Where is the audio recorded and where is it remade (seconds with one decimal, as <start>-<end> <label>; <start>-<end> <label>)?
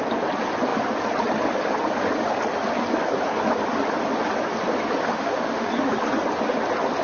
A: 0.0-5.0 recorded; 5.0-5.7 remade; 5.7-7.0 recorded